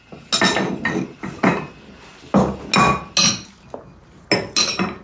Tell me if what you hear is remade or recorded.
recorded